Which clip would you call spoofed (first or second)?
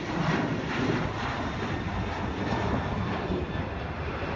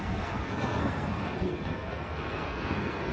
second